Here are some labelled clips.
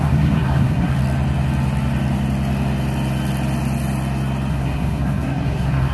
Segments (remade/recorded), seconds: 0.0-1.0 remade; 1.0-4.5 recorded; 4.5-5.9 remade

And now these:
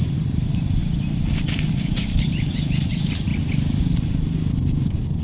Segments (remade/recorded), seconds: 0.0-0.8 remade; 0.8-1.7 recorded; 1.7-3.3 remade; 3.3-3.8 recorded; 3.8-5.2 remade

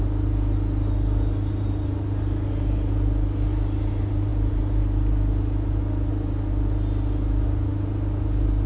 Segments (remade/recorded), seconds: 0.0-8.7 recorded